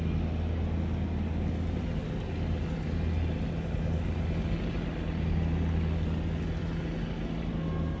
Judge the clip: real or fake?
real